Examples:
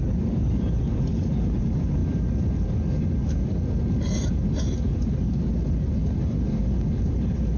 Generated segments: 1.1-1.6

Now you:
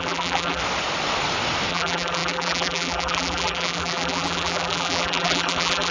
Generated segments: 0.0-0.6; 1.7-5.9